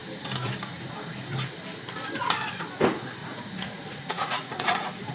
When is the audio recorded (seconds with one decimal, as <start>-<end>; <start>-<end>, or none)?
0.0-3.2